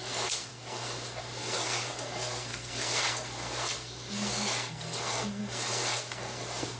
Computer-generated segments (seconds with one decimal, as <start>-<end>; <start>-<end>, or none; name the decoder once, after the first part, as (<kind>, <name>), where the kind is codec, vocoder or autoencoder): 0.0-6.8 (codec, SNAC)